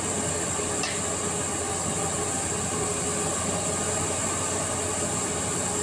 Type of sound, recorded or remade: recorded